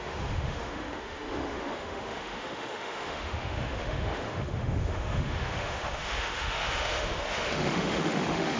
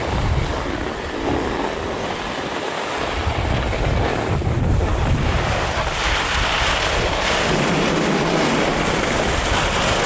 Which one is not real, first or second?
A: first